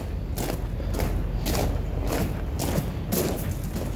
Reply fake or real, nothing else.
real